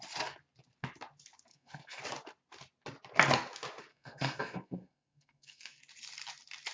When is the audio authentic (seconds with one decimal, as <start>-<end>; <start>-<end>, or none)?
0.0-1.5; 2.0-3.9; 5.8-6.7